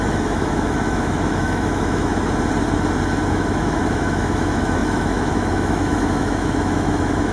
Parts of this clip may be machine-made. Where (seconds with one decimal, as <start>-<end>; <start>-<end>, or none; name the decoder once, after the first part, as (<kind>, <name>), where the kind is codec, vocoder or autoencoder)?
0.0-2.1 (autoencoder, DAC-VAE); 3.3-7.3